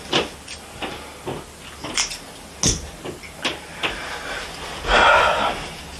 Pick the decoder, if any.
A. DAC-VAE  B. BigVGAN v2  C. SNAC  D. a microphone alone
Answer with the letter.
D